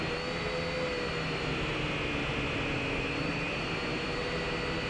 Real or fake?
real